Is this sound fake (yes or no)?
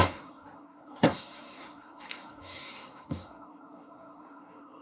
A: yes